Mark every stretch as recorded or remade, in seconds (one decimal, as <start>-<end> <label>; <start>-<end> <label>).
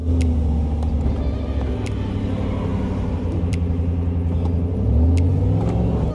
0.0-2.7 recorded; 2.7-3.7 remade; 3.7-6.1 recorded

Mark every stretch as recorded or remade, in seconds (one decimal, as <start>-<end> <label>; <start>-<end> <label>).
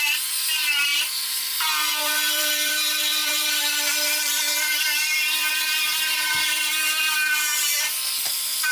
0.0-8.7 remade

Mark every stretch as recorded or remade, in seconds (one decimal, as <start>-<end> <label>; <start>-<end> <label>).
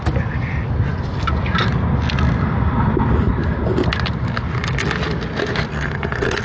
0.0-5.7 recorded; 5.7-6.4 remade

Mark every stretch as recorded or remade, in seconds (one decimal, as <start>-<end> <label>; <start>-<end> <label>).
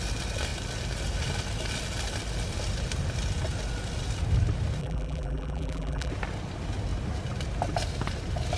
0.0-4.8 recorded; 4.8-6.1 remade; 6.1-8.6 recorded